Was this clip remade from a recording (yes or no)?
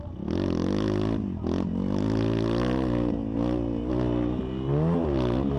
no